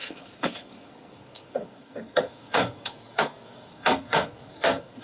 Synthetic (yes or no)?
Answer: yes